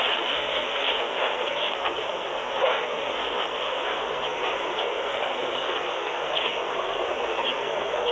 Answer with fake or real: fake